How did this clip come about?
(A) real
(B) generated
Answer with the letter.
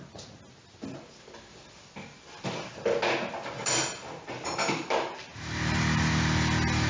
A